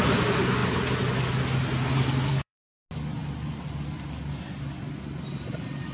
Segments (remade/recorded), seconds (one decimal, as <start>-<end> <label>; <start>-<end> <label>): 0.0-2.3 recorded; 2.3-2.8 remade; 2.8-5.9 recorded